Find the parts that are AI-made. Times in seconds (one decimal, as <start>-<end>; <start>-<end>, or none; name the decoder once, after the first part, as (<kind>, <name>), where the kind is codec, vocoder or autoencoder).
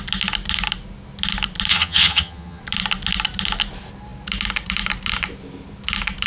1.7-2.6 (vocoder, HiFi-GAN)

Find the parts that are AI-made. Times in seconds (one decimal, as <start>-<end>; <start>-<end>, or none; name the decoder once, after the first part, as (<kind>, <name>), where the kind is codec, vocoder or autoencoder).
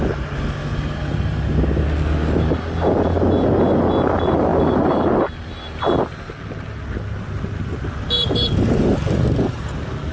none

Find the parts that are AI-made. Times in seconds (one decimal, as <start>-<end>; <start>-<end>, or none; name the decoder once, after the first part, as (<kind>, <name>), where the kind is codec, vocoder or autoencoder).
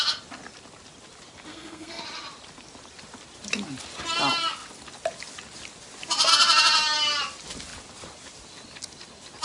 1.5-2.0 (codec, SNAC)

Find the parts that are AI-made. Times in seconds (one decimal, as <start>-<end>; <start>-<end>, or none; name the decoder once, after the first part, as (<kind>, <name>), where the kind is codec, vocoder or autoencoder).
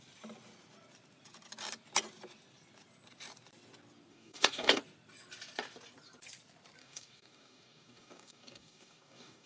4.1-4.8 (codec, DAC); 6.8-9.5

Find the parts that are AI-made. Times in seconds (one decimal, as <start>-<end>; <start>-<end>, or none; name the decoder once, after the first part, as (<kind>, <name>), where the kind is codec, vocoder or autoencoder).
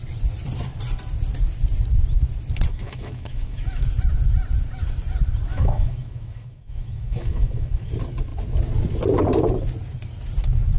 2.7-3.8 (autoencoder, DAC-VAE); 5.5-7.9